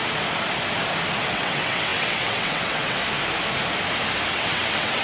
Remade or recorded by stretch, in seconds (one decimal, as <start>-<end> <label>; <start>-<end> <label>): 0.0-1.3 recorded; 1.3-3.0 remade; 3.0-4.3 recorded; 4.3-5.0 remade